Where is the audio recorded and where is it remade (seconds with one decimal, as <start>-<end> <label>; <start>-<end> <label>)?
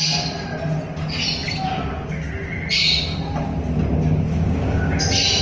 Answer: 0.0-4.3 recorded; 4.3-5.0 remade; 5.0-5.4 recorded